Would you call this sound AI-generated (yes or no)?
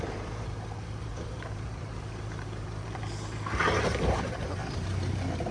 yes